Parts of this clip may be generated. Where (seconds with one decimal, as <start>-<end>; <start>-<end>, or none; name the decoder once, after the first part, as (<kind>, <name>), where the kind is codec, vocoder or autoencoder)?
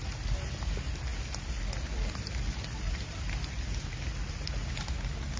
none